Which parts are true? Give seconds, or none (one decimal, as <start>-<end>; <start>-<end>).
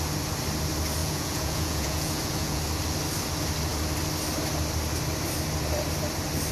0.0-1.0; 2.6-6.5